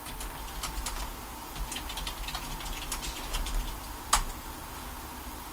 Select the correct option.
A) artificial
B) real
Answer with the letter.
B